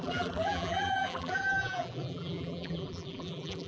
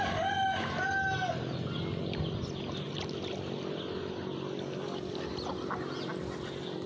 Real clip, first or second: second